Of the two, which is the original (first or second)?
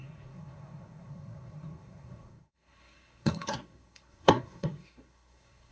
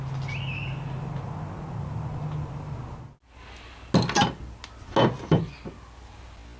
second